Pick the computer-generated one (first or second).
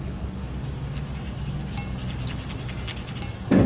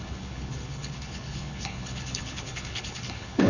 second